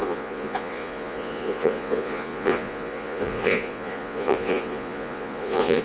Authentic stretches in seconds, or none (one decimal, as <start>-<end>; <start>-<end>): none